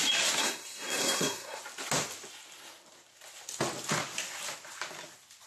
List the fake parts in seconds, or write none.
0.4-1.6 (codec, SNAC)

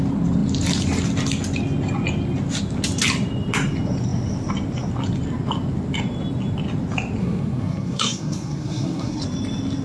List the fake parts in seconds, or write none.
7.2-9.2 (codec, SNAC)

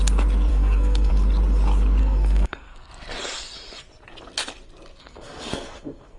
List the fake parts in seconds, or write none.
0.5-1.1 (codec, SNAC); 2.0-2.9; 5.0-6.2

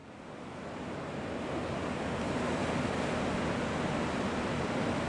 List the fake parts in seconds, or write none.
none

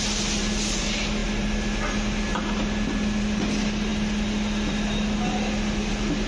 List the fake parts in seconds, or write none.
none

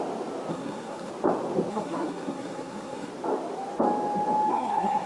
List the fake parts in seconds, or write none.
0.5-1.1 (codec, SNAC); 1.7-3.1; 4.5-5.1

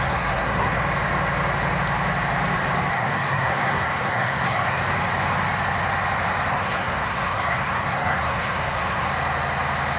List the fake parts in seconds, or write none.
0.0-0.8 (codec, SNAC); 2.9-4.8; 6.5-9.1

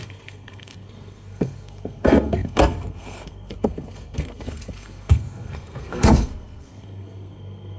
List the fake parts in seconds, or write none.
0.0-7.8 (codec, SNAC)